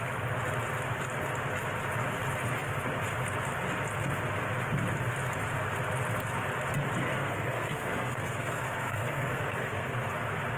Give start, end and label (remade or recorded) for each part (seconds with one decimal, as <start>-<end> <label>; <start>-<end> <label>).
0.0-7.1 recorded; 7.1-10.1 remade; 10.1-10.6 recorded